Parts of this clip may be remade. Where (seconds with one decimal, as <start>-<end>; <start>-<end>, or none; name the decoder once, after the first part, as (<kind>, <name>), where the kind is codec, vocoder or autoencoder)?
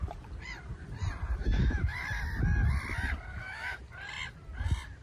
1.4-2.0 (autoencoder, DAC-VAE); 3.3-3.8